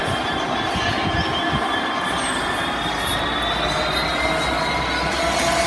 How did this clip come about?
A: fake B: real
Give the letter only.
B